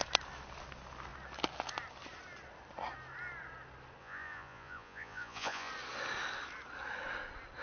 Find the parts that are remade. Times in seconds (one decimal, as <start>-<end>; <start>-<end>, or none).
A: 4.0-5.7